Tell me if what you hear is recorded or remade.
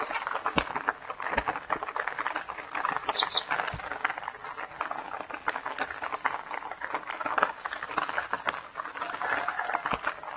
recorded